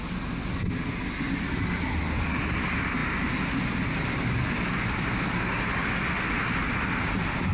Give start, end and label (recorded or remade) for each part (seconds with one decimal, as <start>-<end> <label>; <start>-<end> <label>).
0.0-7.5 recorded